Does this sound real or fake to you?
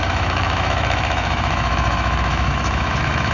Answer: fake